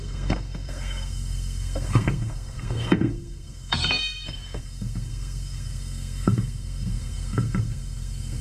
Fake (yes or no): yes